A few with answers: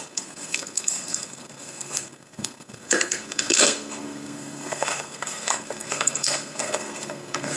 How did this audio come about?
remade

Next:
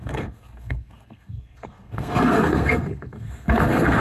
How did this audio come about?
remade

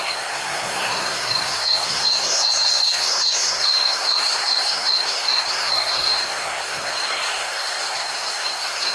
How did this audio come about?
remade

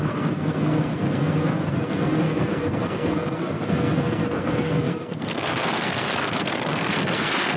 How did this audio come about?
remade